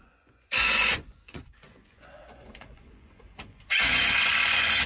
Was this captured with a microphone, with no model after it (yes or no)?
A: no